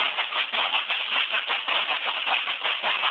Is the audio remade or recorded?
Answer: recorded